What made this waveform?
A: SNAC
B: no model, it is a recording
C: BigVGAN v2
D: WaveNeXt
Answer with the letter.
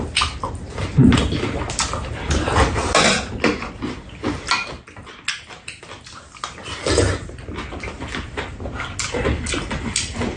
B